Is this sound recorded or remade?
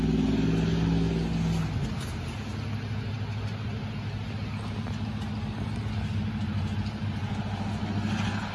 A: recorded